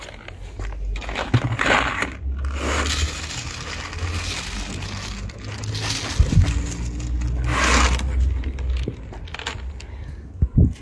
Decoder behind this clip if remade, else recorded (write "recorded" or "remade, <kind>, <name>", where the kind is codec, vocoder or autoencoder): recorded